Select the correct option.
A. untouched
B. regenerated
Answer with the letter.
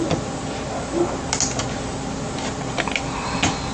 A